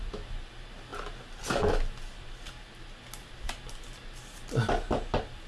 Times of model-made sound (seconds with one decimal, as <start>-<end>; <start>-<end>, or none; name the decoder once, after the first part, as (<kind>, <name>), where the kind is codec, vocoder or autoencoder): none